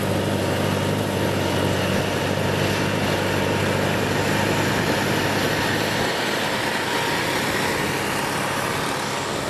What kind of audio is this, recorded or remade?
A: recorded